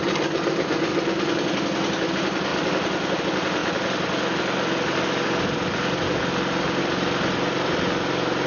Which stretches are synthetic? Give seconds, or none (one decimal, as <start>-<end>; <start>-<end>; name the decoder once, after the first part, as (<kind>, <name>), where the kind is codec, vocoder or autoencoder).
none